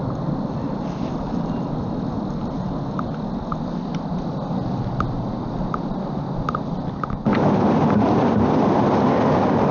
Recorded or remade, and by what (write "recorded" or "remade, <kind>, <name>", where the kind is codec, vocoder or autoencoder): recorded